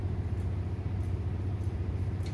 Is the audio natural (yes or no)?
yes